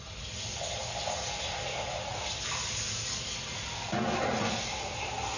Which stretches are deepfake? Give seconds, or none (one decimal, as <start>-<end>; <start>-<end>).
none

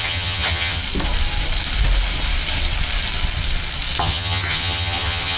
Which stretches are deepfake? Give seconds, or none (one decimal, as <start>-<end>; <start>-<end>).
0.0-0.8; 4.0-5.4